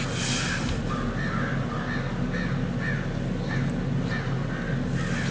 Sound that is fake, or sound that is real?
real